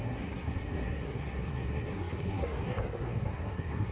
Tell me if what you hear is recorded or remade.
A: remade